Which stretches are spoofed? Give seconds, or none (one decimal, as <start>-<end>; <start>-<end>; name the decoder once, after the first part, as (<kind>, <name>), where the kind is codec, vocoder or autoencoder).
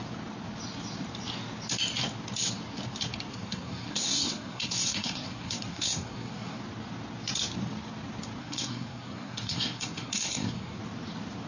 3.3-6.6 (codec, SNAC); 8.4-10.8